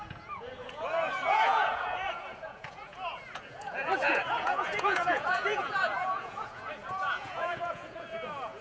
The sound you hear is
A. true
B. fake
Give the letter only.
B